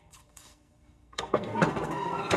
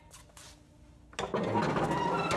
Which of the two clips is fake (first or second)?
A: first